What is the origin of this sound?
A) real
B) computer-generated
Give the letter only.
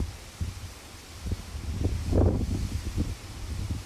A